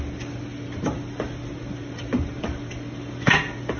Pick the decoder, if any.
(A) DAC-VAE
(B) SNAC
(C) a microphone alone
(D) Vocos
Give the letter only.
C